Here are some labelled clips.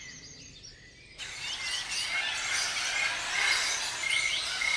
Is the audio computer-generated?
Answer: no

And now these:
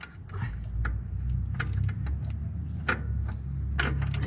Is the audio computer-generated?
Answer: no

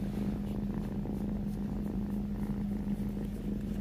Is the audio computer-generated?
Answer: no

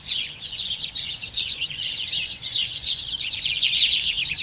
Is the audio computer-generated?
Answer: yes